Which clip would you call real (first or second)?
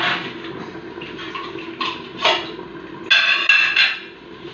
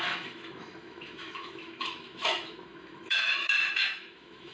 first